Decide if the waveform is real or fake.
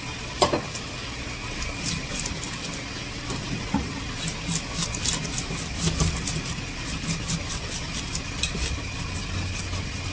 real